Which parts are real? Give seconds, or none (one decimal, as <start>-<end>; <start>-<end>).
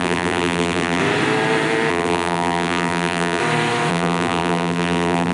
1.0-1.9; 3.4-3.9